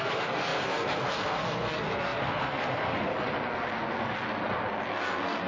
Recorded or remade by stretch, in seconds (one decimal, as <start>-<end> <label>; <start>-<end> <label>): 0.0-3.1 remade; 3.1-4.9 recorded; 4.9-5.5 remade